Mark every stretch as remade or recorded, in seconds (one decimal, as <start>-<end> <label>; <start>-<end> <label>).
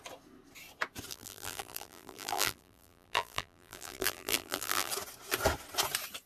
0.0-1.1 recorded; 1.1-4.9 remade; 4.9-6.3 recorded